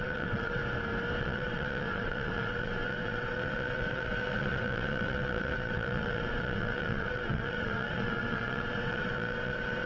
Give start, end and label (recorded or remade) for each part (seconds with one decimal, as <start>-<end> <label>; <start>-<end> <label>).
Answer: 0.0-0.6 remade; 0.6-1.2 recorded; 1.2-9.9 remade